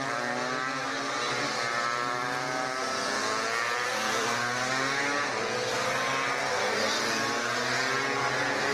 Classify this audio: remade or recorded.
recorded